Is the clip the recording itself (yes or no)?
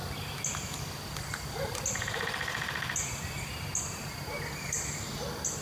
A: yes